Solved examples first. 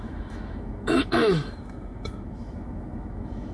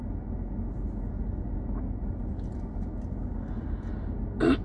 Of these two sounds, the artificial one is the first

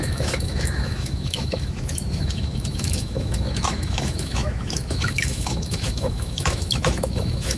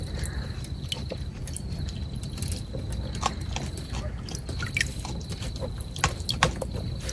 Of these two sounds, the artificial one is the first